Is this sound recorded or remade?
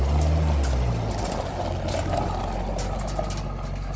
recorded